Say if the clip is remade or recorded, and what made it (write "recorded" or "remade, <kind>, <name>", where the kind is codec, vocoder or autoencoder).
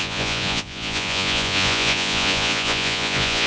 remade, vocoder, Vocos